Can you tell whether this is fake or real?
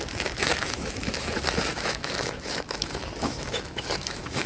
fake